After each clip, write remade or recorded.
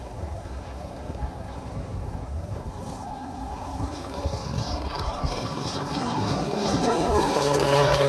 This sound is remade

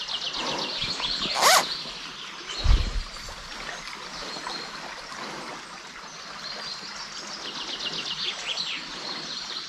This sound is recorded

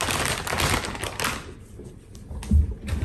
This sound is recorded